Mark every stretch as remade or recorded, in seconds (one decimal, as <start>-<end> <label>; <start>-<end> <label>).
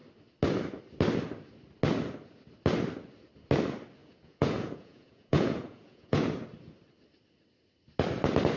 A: 0.0-4.0 recorded; 4.0-6.2 remade; 6.2-8.6 recorded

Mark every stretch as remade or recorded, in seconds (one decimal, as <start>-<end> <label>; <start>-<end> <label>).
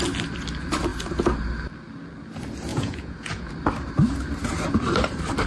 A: 0.0-2.7 recorded; 2.7-3.5 remade; 3.5-5.5 recorded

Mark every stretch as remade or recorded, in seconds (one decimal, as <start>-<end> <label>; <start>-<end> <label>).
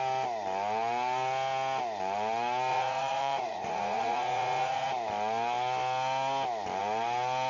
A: 0.0-2.7 recorded; 2.7-4.9 remade; 4.9-7.5 recorded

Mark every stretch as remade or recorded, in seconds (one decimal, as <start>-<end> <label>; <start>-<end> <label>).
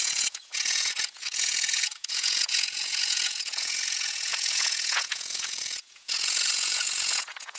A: 0.0-7.6 remade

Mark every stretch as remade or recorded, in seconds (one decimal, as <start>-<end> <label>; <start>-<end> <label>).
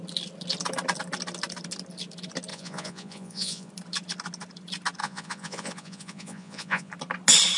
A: 0.0-2.5 recorded; 2.5-3.7 remade; 3.7-5.0 recorded; 5.0-6.9 remade; 6.9-7.6 recorded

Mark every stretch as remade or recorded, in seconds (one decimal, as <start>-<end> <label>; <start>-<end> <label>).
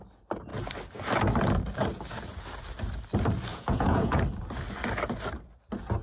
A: 0.0-3.5 recorded; 3.5-4.2 remade; 4.2-6.0 recorded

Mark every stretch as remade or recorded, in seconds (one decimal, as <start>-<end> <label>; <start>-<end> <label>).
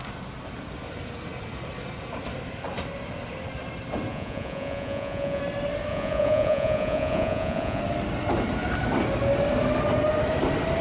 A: 0.0-4.1 recorded; 4.1-5.4 remade; 5.4-5.9 recorded; 5.9-7.8 remade; 7.8-10.8 recorded